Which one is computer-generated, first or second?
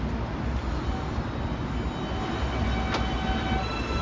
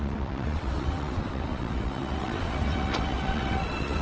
second